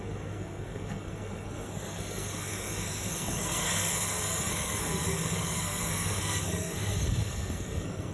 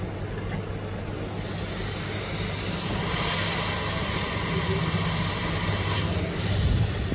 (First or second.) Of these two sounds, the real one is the second